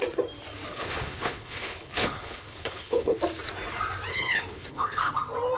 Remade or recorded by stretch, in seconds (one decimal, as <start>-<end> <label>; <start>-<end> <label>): 0.0-0.7 recorded; 0.7-3.2 remade; 3.2-4.1 recorded; 4.1-5.1 remade; 5.1-5.6 recorded